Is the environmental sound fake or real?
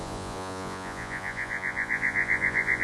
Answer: fake